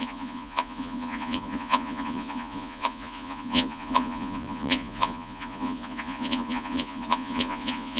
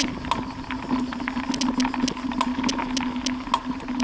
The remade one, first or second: first